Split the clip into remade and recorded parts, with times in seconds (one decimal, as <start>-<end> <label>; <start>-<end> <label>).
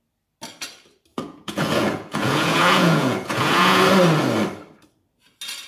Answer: 0.0-1.1 recorded; 1.1-3.8 remade; 3.8-5.7 recorded